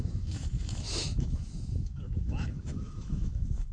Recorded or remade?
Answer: remade